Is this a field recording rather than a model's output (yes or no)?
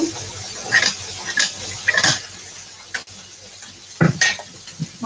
yes